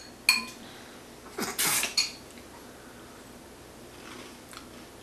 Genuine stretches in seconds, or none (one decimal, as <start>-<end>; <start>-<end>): 0.0-5.0